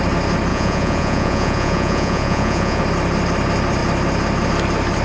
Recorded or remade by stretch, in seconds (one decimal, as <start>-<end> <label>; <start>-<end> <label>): 0.0-0.5 recorded; 0.5-2.8 remade; 2.8-5.0 recorded